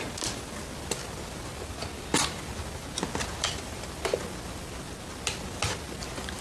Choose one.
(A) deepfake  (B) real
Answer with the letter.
B